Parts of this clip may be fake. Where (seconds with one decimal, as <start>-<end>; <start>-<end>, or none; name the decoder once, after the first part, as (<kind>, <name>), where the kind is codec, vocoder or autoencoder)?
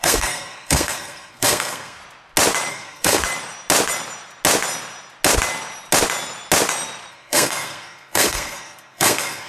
0.0-2.0 (codec, SNAC); 2.7-3.2; 7.1-9.5